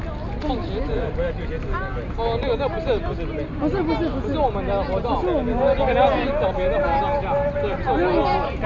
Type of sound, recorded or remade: recorded